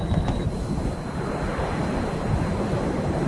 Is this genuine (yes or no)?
yes